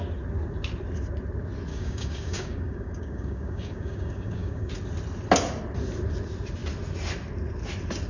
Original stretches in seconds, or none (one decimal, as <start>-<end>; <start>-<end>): 0.0-1.7; 4.7-8.1